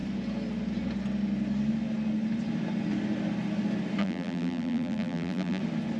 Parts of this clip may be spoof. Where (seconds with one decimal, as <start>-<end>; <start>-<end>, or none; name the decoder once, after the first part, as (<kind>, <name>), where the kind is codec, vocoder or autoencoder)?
4.0-5.6 (vocoder, BigVGAN v2)